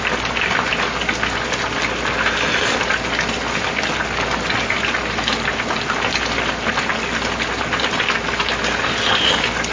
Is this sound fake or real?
real